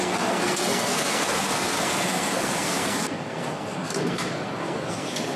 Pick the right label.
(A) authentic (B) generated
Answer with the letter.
B